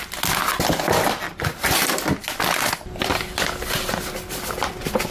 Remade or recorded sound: recorded